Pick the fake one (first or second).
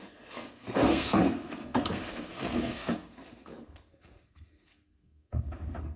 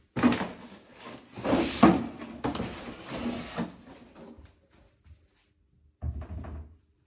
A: first